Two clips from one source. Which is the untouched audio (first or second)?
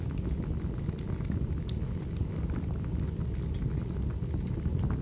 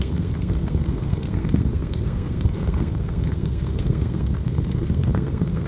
first